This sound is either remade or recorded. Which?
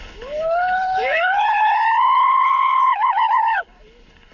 remade